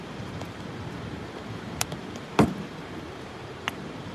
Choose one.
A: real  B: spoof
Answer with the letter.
B